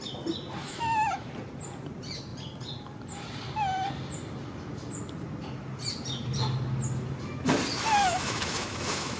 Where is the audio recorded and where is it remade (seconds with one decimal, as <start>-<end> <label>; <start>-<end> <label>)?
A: 0.0-0.6 recorded; 0.6-1.3 remade; 1.3-8.0 recorded; 8.0-9.2 remade